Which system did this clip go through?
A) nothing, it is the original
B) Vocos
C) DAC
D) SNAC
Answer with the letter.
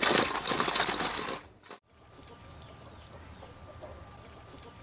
A